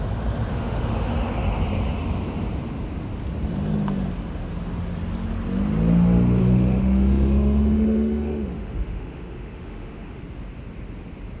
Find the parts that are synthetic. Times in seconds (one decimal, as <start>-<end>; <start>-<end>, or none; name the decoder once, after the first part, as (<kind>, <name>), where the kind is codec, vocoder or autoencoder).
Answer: 0.5-1.1 (autoencoder, DAC-VAE); 6.4-10.2